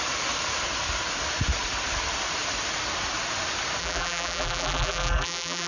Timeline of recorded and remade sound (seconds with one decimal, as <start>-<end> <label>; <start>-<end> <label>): 0.0-3.8 recorded; 3.8-5.7 remade